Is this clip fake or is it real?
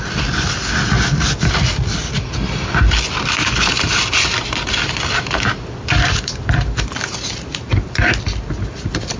real